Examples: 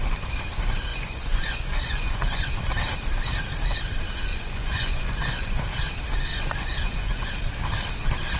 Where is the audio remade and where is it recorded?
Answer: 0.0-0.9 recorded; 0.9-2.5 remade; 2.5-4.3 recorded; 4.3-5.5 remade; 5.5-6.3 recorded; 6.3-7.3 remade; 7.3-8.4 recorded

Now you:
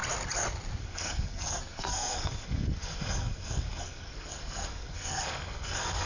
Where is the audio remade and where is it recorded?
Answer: 0.0-0.8 recorded; 0.8-6.1 remade

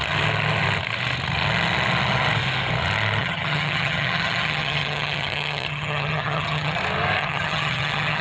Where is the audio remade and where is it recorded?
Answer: 0.0-3.2 recorded; 3.2-6.8 remade; 6.8-7.2 recorded; 7.2-8.2 remade

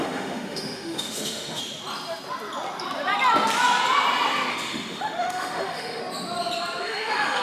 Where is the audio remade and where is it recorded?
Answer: 0.0-1.6 remade; 1.6-4.5 recorded; 4.5-6.0 remade; 6.0-6.8 recorded; 6.8-7.4 remade

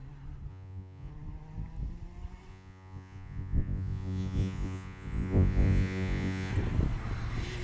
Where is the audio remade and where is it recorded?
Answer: 0.0-0.5 recorded; 0.5-1.1 remade; 1.1-2.5 recorded; 2.5-6.5 remade; 6.5-7.6 recorded

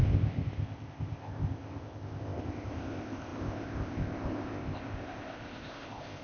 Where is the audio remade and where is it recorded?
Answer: 0.0-6.2 remade

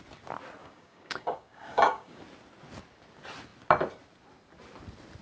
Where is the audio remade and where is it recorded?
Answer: 0.0-0.6 recorded; 0.6-2.2 remade; 2.2-5.2 recorded

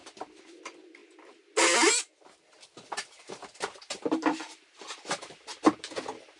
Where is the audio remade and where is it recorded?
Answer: 0.0-6.4 recorded